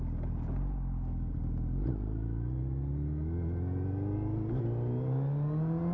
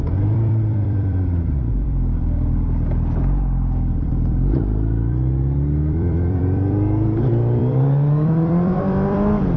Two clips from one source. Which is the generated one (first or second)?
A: second